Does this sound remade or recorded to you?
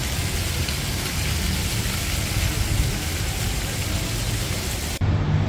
recorded